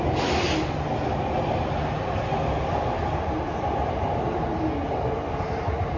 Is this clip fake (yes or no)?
no